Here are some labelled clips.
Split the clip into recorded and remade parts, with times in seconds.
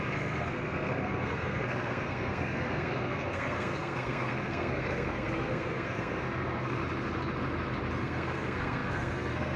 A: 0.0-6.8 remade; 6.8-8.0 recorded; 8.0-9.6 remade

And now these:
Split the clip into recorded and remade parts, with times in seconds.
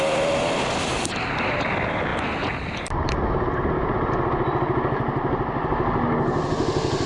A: 0.0-7.1 recorded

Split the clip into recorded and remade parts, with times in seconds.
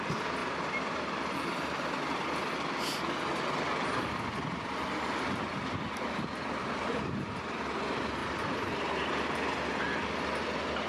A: 0.0-0.4 recorded; 0.4-1.8 remade; 1.8-6.6 recorded; 6.6-7.6 remade; 7.6-8.2 recorded; 8.2-8.9 remade; 8.9-10.9 recorded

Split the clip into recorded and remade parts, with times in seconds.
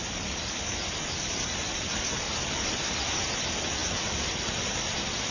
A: 0.0-3.2 remade; 3.2-3.8 recorded; 3.8-4.8 remade; 4.8-5.3 recorded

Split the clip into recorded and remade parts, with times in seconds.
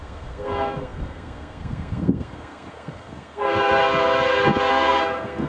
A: 0.0-3.8 remade; 3.8-4.7 recorded; 4.7-5.5 remade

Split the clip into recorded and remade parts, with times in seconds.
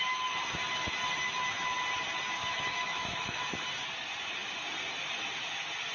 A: 0.0-2.4 recorded; 2.4-3.4 remade; 3.4-5.9 recorded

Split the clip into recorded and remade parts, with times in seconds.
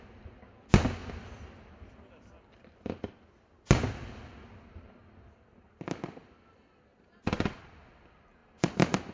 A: 0.0-6.2 recorded; 6.2-7.7 remade; 7.7-8.4 recorded; 8.4-9.1 remade